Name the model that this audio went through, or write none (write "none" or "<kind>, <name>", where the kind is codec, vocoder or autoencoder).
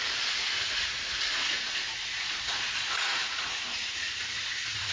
vocoder, Vocos